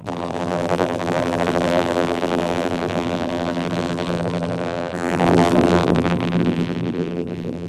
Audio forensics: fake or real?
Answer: fake